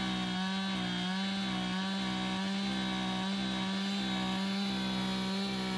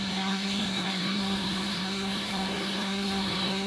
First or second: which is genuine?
first